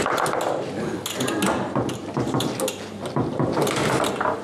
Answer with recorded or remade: recorded